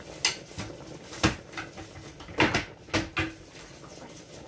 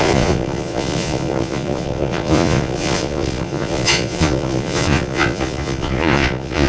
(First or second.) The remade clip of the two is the second